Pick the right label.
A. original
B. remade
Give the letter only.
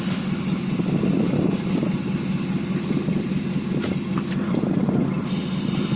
A